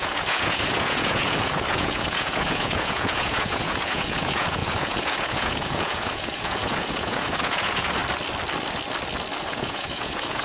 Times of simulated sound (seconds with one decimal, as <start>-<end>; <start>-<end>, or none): 0.0-8.0; 9.5-10.4